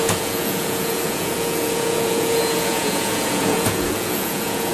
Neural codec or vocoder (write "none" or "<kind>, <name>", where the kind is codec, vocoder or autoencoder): vocoder, Vocos